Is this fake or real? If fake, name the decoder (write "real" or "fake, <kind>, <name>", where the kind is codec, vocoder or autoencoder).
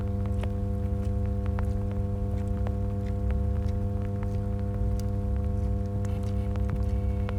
real